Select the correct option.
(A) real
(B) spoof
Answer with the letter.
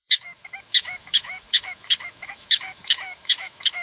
B